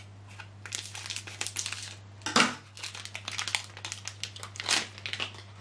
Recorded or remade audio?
recorded